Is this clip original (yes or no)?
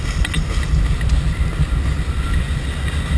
yes